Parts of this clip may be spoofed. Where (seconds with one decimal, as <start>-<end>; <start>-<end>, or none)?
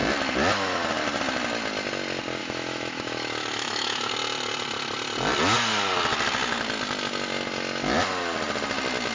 2.4-4.1